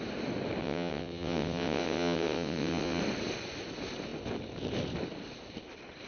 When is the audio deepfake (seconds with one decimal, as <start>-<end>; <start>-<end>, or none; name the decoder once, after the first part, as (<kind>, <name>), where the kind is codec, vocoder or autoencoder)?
0.6-3.0 (vocoder, WaveNeXt)